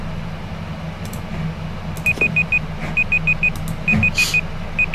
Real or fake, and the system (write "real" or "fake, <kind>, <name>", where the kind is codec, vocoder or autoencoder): real